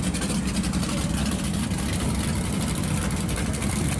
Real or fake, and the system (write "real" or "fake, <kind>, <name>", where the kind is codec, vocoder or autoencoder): real